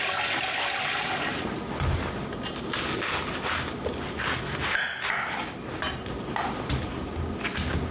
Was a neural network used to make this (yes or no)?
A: no